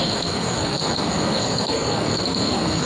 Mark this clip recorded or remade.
remade